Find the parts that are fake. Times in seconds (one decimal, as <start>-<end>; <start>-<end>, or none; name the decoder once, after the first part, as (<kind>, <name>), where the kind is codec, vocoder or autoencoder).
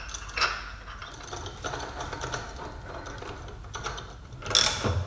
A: none